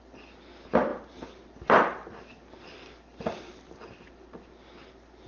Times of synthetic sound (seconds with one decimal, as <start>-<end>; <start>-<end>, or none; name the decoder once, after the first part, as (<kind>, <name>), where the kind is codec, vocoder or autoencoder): none